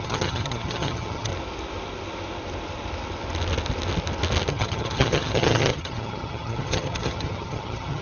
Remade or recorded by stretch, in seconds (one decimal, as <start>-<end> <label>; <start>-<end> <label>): 0.0-1.3 remade; 1.3-4.5 recorded; 4.5-8.0 remade